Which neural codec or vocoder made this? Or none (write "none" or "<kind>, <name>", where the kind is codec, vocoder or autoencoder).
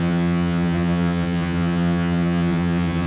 vocoder, HiFi-GAN